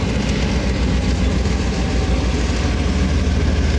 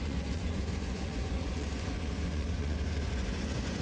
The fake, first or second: second